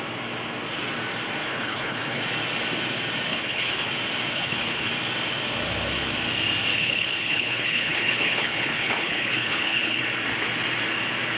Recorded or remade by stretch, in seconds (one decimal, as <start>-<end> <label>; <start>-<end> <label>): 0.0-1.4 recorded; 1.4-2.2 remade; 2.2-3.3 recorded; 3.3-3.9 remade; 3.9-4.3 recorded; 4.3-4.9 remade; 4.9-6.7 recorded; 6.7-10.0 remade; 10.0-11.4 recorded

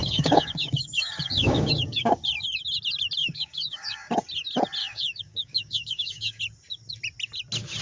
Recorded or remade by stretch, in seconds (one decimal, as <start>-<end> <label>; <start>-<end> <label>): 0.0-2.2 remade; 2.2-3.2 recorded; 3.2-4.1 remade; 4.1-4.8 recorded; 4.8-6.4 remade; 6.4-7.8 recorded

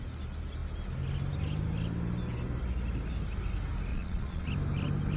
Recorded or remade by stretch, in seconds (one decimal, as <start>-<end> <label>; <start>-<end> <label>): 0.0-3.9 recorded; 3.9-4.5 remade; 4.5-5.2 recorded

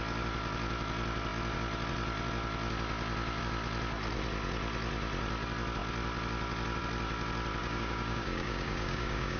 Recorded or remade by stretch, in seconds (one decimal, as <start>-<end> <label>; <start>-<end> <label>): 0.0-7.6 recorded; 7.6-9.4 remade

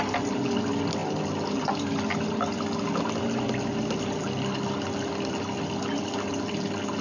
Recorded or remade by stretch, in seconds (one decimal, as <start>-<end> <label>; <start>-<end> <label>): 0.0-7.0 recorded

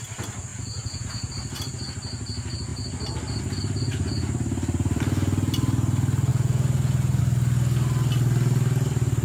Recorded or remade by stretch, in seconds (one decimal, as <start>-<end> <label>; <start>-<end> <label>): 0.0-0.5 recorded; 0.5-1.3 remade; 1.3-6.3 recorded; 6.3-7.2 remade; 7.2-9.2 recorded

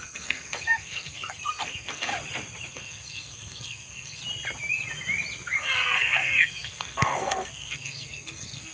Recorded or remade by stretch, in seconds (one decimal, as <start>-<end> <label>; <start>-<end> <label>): 0.0-2.1 remade; 2.1-2.7 recorded; 2.7-4.2 remade; 4.2-5.6 recorded; 5.6-8.7 remade

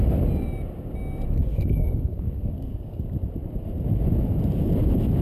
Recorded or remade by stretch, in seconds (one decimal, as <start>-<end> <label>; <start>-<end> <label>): 0.0-1.4 recorded; 1.4-3.0 remade; 3.0-5.2 recorded